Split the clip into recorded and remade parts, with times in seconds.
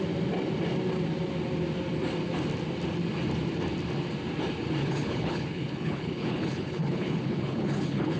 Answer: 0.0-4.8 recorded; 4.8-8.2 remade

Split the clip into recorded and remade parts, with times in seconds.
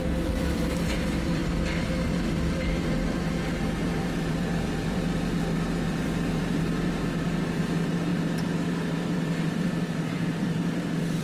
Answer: 0.0-1.4 remade; 1.4-2.1 recorded; 2.1-11.2 remade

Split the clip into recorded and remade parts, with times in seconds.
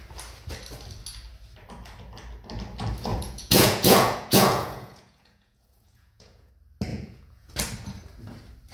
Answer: 0.0-3.1 recorded; 3.1-6.5 remade; 6.5-6.9 recorded; 6.9-7.5 remade; 7.5-8.7 recorded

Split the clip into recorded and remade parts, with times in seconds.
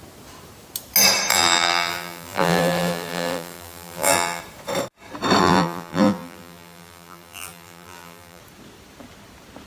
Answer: 0.0-1.3 recorded; 1.3-4.4 remade; 4.4-5.4 recorded; 5.4-8.4 remade; 8.4-9.7 recorded